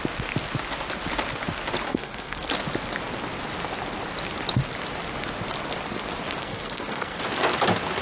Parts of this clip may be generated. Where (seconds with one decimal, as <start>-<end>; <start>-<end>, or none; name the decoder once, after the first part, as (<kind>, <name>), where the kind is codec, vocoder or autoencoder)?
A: 1.9-2.5 (codec, SNAC); 6.4-7.2

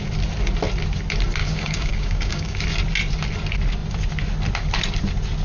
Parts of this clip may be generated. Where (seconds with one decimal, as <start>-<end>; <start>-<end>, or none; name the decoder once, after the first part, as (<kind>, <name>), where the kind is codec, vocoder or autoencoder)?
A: 1.4-2.6 (codec, DAC)

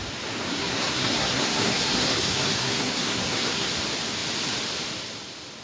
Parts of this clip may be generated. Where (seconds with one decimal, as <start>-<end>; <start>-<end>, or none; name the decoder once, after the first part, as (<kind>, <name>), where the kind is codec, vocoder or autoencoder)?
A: 0.5-3.7 (codec, SNAC)

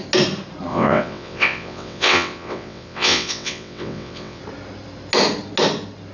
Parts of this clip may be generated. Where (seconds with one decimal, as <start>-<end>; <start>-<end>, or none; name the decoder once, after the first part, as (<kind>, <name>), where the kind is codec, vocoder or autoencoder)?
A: 0.7-4.4 (vocoder, WaveNeXt)